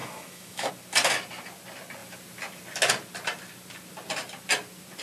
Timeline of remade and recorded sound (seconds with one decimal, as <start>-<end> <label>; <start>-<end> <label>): 0.0-0.7 remade; 0.7-5.0 recorded